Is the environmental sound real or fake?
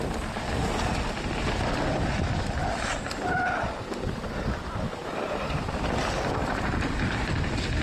real